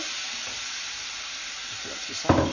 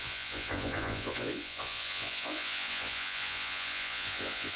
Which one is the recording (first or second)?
first